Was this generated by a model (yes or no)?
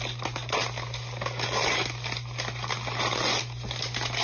no